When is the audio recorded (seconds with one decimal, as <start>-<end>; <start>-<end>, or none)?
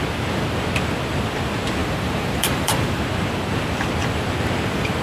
0.0-1.8; 3.0-5.0